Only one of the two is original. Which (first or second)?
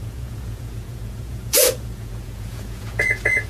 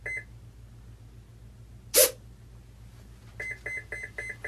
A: second